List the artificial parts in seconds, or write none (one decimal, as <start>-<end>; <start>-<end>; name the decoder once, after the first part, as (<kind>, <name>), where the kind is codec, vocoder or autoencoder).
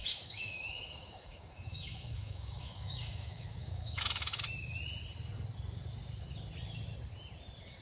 0.0-4.4 (autoencoder, DAC-VAE)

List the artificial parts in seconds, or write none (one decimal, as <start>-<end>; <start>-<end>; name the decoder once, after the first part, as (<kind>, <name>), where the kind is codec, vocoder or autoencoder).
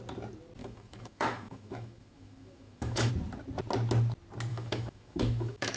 0.6-3.1 (autoencoder, DAC-VAE); 4.5-5.8